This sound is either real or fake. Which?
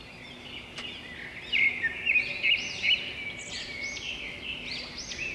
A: real